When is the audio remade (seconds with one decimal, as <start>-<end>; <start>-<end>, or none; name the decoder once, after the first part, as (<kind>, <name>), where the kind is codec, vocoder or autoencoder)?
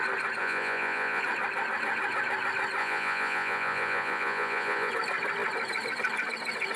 0.4-1.2 (vocoder, Vocos); 2.8-4.9